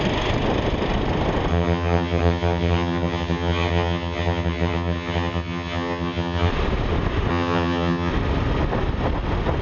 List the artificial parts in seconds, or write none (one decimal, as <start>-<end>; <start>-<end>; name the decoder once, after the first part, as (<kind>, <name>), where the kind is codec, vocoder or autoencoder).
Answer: 1.5-6.5 (vocoder, HiFi-GAN); 7.3-8.1

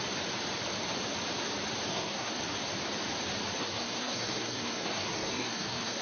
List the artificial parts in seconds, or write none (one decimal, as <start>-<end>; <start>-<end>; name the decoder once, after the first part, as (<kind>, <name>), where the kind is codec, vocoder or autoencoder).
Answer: 1.9-2.4 (codec, SNAC); 3.6-6.0

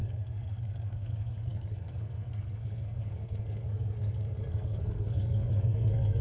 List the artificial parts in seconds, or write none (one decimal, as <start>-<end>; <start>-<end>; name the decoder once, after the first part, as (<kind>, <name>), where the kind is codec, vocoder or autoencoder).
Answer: 0.0-6.2 (codec, SNAC)